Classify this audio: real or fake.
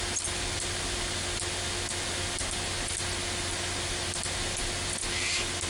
real